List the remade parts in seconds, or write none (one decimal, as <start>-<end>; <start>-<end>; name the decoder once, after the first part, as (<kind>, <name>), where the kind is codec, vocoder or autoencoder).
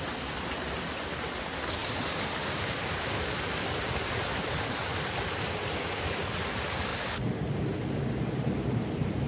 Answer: 4.9-5.5 (vocoder, BigVGAN v2)